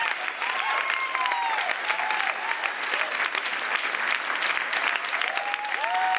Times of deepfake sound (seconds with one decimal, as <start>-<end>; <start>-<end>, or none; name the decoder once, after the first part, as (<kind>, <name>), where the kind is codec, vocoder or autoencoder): none